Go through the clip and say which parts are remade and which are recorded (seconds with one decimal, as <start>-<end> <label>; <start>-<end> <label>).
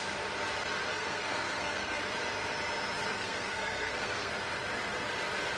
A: 0.0-0.9 recorded; 0.9-2.0 remade; 2.0-3.1 recorded; 3.1-4.3 remade; 4.3-5.6 recorded